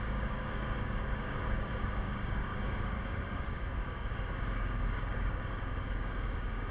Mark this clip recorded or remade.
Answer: remade